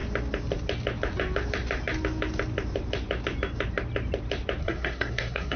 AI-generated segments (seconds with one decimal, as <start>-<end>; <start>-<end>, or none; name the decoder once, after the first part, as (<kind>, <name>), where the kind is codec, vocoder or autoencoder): 4.6-5.6 (codec, SNAC)